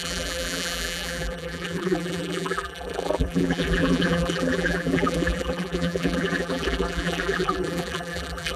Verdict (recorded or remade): remade